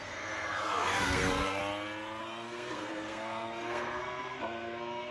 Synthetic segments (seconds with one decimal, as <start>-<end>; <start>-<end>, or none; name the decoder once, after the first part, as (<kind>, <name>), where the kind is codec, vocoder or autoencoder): 0.0-1.6 (codec, SNAC); 2.2-5.1